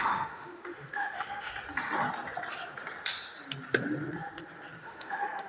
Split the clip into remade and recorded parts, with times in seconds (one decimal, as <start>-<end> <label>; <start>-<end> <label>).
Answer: 0.0-1.5 remade; 1.5-4.8 recorded; 4.8-5.5 remade